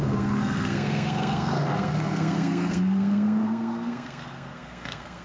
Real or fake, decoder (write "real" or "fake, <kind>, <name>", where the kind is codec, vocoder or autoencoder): fake, codec, SNAC